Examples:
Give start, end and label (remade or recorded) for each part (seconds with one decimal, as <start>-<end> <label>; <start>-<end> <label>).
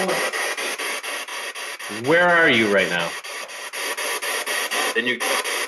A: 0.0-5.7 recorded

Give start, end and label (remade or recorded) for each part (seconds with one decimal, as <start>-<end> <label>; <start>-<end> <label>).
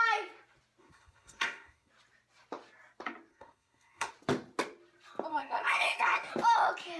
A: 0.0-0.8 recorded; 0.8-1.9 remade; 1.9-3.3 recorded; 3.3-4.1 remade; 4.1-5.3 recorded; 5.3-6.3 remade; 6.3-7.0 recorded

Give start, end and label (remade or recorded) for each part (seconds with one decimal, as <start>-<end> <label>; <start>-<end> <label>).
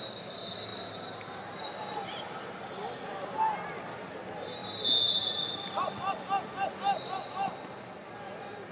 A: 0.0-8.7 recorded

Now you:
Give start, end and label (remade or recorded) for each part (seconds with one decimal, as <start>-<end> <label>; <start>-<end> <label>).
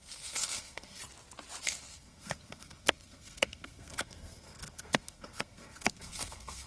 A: 0.0-1.0 remade; 1.0-1.6 recorded; 1.6-6.7 remade